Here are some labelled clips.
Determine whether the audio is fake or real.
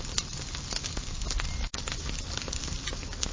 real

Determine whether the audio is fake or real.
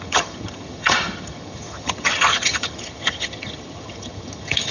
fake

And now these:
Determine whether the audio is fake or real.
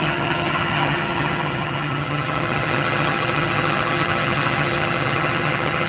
fake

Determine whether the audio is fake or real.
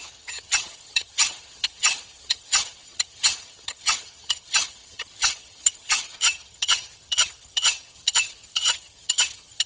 fake